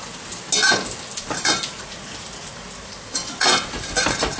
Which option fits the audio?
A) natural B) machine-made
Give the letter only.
A